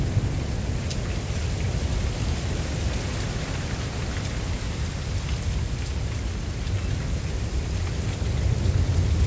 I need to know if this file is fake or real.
real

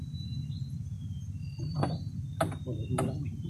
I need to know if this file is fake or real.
real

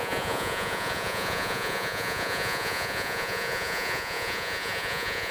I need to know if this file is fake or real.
fake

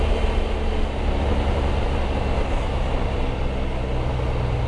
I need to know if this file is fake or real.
real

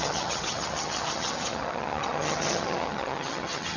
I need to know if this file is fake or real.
fake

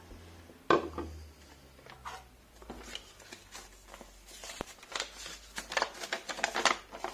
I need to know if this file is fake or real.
real